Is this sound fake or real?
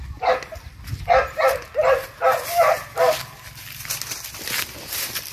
real